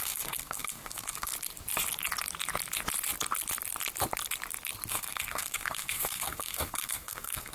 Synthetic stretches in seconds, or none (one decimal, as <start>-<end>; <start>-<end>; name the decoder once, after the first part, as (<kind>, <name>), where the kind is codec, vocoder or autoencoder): 0.0-1.3 (codec, SNAC); 4.9-7.5